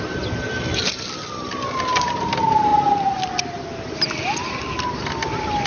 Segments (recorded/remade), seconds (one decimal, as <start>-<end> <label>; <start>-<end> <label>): 0.0-5.7 recorded